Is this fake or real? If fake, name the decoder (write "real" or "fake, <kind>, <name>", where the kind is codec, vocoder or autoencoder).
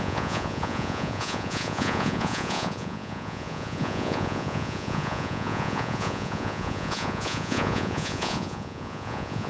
fake, vocoder, Vocos